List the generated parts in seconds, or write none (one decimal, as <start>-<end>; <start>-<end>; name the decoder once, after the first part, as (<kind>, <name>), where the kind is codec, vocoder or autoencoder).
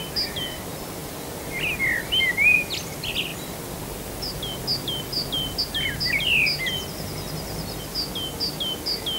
none